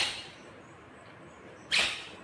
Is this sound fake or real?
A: fake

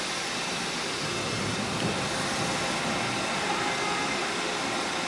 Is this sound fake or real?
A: real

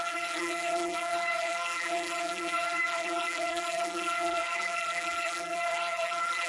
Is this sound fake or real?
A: fake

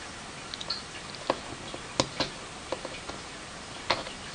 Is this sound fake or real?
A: real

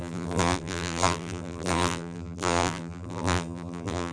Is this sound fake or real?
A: fake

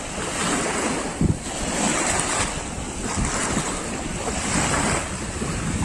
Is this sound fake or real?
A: real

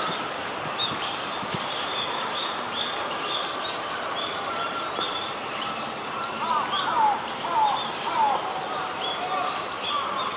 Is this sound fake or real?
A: fake